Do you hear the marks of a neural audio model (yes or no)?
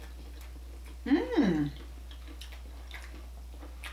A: no